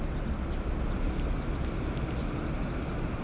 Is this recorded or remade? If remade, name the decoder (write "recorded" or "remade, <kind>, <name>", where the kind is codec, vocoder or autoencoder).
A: recorded